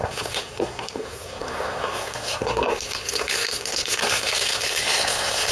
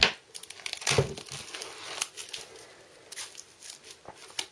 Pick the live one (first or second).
second